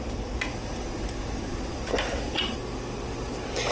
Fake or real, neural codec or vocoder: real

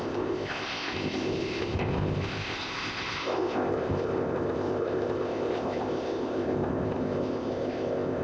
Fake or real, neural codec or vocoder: fake, codec, ZipCodec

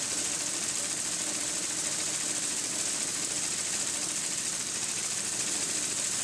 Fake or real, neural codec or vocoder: real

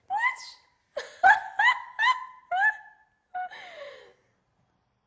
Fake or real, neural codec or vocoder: real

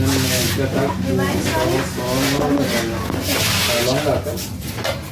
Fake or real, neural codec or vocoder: real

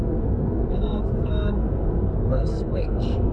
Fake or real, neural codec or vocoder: fake, codec, SNAC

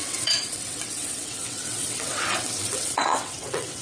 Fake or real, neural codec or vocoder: fake, vocoder, WaveNeXt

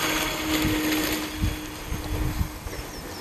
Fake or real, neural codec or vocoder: real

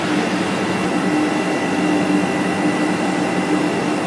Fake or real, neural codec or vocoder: real